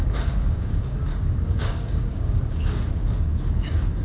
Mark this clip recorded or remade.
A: remade